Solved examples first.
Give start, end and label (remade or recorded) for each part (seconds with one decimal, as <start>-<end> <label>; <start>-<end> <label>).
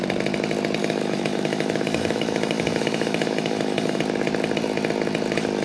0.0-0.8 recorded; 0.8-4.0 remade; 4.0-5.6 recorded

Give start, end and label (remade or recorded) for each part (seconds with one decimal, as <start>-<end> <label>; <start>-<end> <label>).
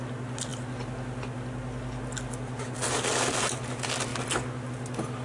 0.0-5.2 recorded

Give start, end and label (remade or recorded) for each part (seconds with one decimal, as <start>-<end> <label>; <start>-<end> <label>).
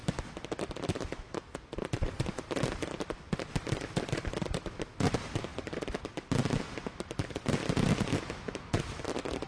0.0-9.5 recorded